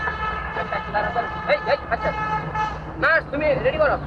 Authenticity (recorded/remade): recorded